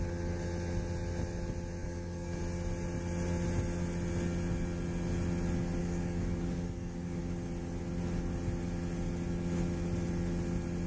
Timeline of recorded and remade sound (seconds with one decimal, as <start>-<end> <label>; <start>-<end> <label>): 0.0-1.8 recorded; 1.8-2.4 remade; 2.4-5.8 recorded; 5.8-7.2 remade; 7.2-10.9 recorded